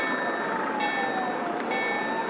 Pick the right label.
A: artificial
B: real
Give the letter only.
B